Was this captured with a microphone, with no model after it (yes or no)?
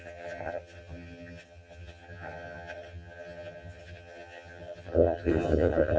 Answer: no